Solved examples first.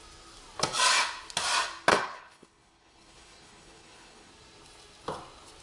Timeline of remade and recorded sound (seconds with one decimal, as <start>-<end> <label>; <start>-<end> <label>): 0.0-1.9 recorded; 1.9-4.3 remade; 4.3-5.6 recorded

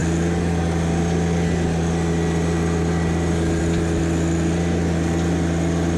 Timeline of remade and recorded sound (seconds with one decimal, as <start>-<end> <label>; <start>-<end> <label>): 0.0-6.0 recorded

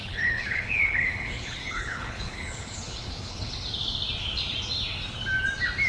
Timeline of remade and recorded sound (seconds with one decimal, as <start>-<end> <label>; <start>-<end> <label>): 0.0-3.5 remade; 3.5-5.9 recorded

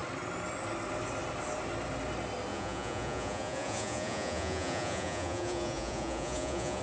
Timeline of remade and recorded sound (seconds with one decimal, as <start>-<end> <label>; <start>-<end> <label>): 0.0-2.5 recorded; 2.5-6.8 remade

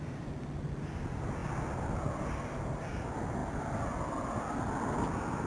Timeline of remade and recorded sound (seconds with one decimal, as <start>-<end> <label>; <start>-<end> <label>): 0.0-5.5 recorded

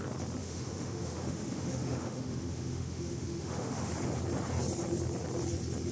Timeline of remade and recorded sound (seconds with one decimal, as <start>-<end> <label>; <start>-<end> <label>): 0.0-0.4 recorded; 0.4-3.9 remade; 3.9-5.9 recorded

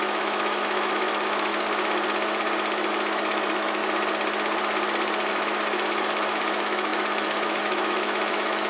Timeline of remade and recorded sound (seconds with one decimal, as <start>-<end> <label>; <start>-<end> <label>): 0.0-1.5 remade; 1.5-2.9 recorded; 2.9-3.8 remade; 3.8-5.3 recorded; 5.3-8.7 remade

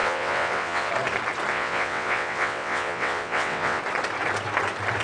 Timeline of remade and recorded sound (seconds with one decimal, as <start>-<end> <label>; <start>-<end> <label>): 0.0-0.9 remade; 0.9-1.5 recorded; 1.5-3.8 remade; 3.8-5.0 recorded